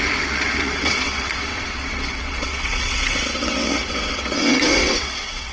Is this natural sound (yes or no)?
no